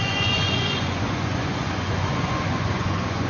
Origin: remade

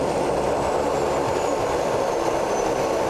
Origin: remade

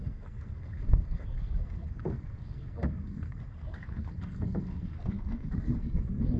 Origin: remade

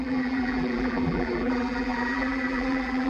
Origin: remade